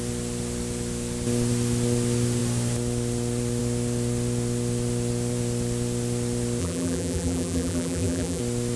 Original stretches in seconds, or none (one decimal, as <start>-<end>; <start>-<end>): 0.0-6.6; 8.4-8.8